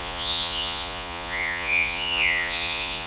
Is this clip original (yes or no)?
no